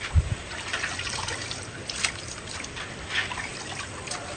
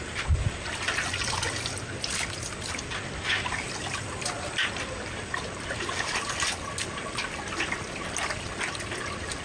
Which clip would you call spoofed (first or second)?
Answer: first